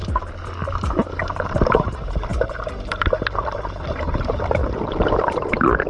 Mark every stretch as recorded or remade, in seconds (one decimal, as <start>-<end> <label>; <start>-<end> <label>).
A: 0.0-1.2 recorded; 1.2-4.6 remade; 4.6-5.3 recorded; 5.3-5.9 remade